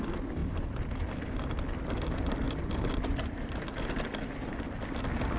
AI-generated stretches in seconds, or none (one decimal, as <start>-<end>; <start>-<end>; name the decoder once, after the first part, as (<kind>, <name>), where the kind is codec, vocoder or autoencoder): 0.4-3.6 (vocoder, BigVGAN v2)